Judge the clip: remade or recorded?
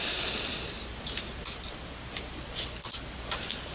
recorded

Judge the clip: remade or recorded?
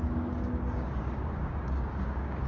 remade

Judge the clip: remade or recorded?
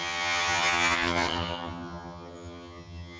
remade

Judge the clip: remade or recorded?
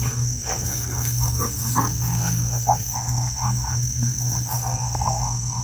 remade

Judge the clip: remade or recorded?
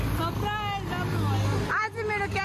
recorded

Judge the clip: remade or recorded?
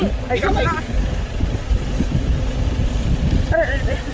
remade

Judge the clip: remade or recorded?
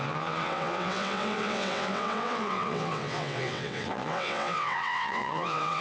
remade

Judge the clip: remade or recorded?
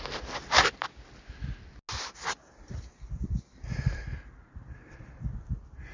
recorded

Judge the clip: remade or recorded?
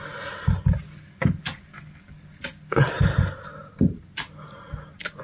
recorded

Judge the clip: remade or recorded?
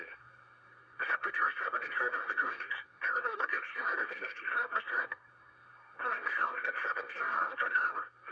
remade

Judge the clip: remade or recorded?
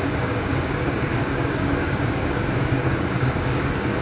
remade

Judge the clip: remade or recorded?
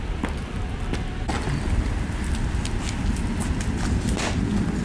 recorded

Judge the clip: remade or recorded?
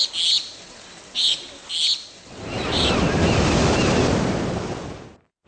recorded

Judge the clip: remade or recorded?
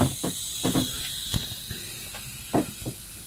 recorded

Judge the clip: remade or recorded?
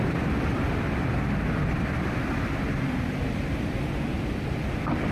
remade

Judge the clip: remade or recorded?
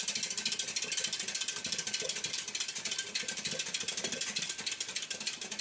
recorded